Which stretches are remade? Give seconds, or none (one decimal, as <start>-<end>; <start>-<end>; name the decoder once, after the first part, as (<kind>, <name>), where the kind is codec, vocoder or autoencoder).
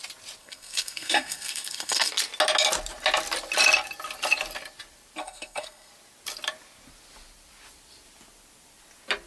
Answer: 0.4-2.1 (codec, SNAC); 5.2-5.9